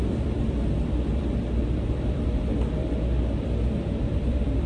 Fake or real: fake